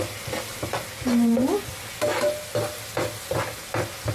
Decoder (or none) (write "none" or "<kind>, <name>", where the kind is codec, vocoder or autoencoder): none